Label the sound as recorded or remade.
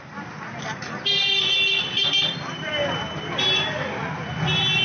recorded